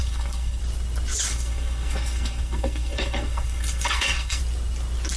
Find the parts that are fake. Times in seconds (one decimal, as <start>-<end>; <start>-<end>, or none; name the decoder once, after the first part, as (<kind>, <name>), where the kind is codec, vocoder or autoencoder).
0.0-0.6 (codec, SNAC); 1.3-4.4